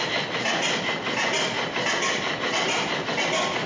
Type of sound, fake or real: real